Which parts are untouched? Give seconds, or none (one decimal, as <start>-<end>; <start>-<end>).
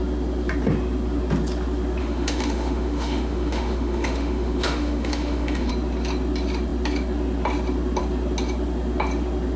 0.0-2.0; 5.7-9.6